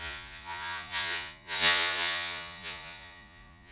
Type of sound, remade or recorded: remade